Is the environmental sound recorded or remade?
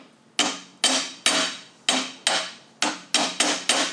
recorded